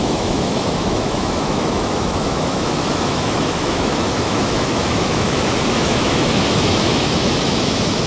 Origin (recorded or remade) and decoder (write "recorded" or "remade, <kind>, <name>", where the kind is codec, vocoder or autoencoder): remade, autoencoder, DAC-VAE